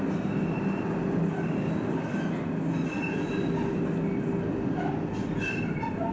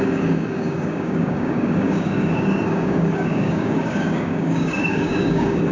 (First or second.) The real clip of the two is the first